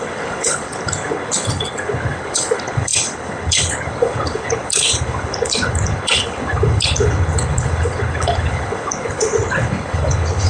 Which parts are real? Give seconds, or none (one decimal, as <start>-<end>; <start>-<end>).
none